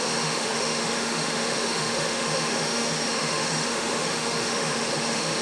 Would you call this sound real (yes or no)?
no